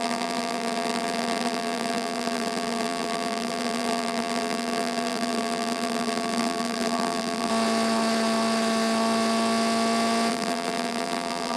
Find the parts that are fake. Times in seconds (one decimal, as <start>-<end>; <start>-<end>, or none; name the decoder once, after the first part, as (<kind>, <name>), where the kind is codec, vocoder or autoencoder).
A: 0.0-7.5 (vocoder, BigVGAN v2); 10.3-11.6